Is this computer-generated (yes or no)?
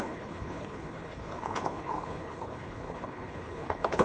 yes